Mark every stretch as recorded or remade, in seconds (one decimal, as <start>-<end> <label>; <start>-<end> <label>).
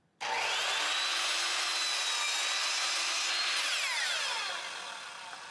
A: 0.0-1.1 recorded; 1.1-1.6 remade; 1.6-5.5 recorded